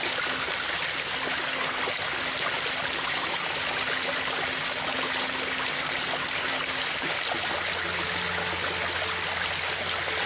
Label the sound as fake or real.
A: real